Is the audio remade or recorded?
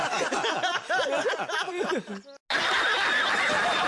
recorded